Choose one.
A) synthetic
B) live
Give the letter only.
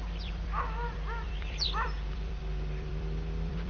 A